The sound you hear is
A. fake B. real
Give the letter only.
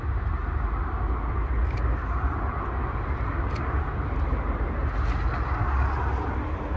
B